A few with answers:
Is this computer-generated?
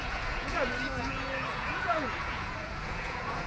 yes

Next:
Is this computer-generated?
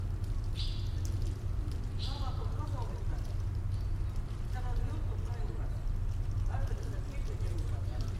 no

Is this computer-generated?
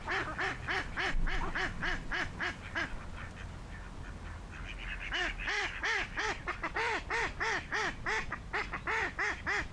no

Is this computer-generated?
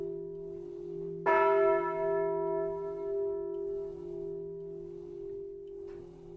no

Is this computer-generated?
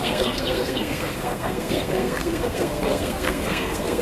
yes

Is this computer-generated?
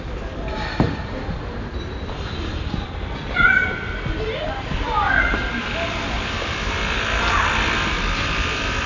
no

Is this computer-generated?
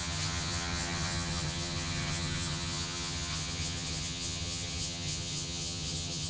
yes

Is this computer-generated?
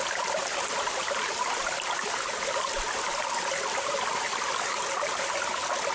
no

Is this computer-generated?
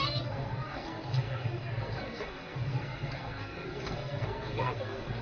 yes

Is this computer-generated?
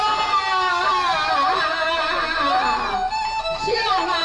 no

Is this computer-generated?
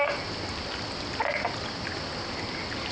no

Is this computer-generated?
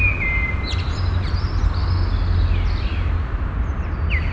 no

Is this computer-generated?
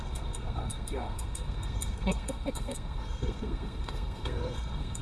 yes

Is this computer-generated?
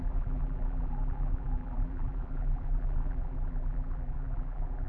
yes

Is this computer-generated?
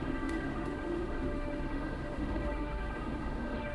yes